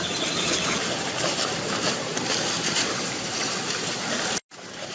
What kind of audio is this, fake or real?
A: real